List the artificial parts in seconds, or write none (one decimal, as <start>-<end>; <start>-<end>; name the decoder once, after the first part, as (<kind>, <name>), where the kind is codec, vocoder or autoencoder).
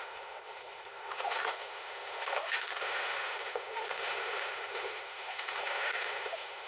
0.0-6.7 (autoencoder, DAC-VAE)